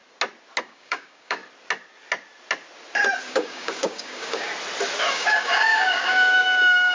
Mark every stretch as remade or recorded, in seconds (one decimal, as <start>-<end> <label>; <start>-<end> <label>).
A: 0.0-0.6 recorded; 0.6-1.4 remade; 1.4-3.3 recorded; 3.3-4.5 remade; 4.5-5.1 recorded; 5.1-6.9 remade